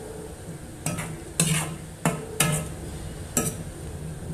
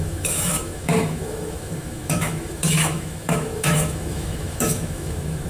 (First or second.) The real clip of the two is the first